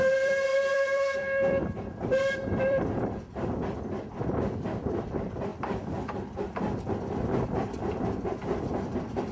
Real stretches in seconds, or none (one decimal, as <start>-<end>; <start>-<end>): 5.5-6.1